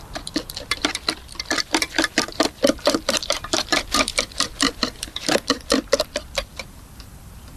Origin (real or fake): fake